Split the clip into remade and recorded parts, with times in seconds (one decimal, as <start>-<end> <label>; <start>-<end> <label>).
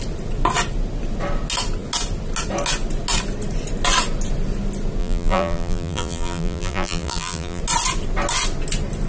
0.0-5.0 recorded; 5.0-7.6 remade; 7.6-9.1 recorded